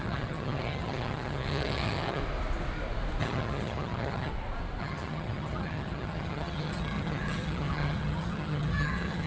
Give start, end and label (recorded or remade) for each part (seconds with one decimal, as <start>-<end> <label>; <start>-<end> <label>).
0.0-2.2 remade; 2.2-3.2 recorded; 3.2-4.3 remade; 4.3-4.8 recorded; 4.8-9.3 remade